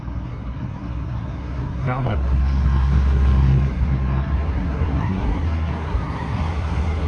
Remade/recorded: remade